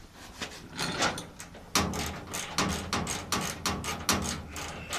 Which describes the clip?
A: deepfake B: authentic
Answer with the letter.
B